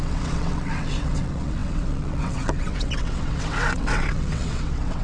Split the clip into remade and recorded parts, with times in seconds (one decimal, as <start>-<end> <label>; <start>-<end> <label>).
0.0-5.0 remade